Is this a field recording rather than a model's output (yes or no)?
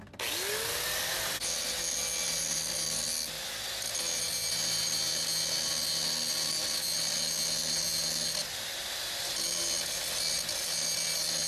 yes